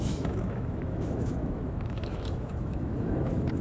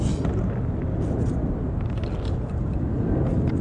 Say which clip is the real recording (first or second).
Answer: second